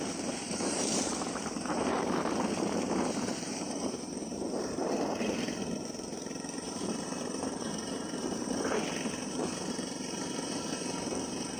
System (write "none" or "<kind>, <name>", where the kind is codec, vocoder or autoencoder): vocoder, BigVGAN v2